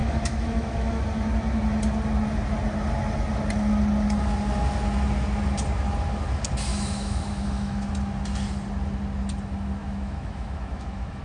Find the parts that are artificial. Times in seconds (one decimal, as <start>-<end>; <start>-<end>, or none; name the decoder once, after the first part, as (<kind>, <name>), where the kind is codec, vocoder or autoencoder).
0.0-1.0 (autoencoder, DAC-VAE); 6.7-7.9; 9.8-11.2